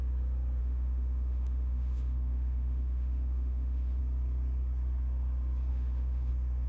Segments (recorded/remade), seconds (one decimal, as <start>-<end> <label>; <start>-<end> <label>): 0.0-0.6 recorded; 0.6-4.0 remade; 4.0-5.7 recorded; 5.7-6.3 remade; 6.3-6.7 recorded